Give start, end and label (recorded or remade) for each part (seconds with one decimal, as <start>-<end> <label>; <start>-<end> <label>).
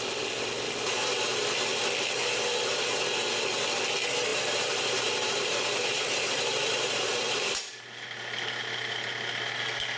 0.0-4.3 recorded; 4.3-7.5 remade; 7.5-10.0 recorded